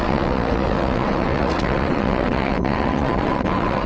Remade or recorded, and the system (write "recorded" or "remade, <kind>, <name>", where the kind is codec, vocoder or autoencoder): remade, vocoder, WaveNeXt